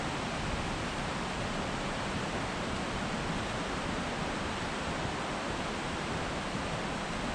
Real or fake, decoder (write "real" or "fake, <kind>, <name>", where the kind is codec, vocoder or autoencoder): real